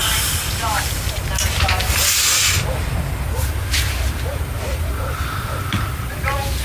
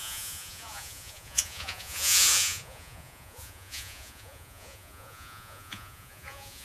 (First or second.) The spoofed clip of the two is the second